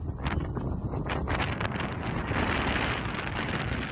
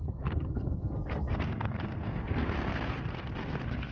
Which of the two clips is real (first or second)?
first